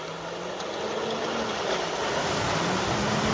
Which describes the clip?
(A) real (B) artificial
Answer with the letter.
A